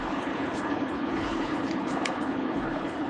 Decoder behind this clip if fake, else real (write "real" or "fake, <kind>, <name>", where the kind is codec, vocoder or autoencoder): fake, codec, HILCodec